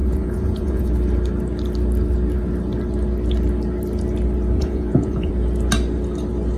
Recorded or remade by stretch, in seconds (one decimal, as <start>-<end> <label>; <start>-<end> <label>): 0.0-0.9 remade; 0.9-4.6 recorded; 4.6-5.3 remade; 5.3-6.6 recorded